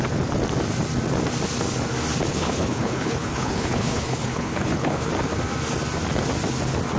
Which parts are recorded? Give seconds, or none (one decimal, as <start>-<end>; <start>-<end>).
0.0-2.3; 5.1-7.0